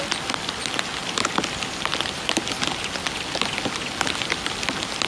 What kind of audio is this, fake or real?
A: real